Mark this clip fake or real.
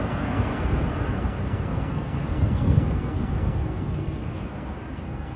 fake